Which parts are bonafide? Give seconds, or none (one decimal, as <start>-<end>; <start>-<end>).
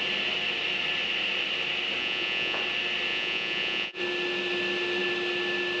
0.0-2.0; 2.6-3.1; 4.0-5.8